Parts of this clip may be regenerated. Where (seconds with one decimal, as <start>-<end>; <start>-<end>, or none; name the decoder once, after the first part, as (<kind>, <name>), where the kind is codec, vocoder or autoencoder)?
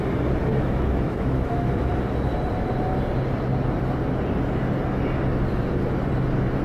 0.4-1.9 (autoencoder, DAC-VAE)